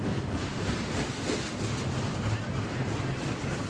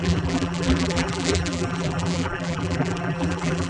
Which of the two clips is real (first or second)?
first